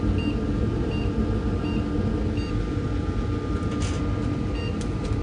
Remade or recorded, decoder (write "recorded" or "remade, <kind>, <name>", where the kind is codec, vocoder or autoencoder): recorded